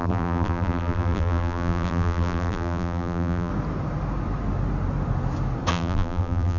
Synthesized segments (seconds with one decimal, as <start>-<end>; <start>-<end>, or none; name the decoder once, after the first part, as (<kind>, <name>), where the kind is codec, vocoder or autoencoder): 0.0-3.5 (vocoder, BigVGAN v2); 5.7-6.6